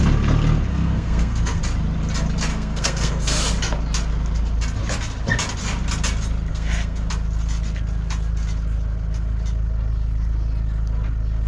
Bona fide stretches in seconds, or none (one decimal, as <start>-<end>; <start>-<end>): 0.0-0.7; 1.6-2.5; 3.4-6.5; 7.1-11.5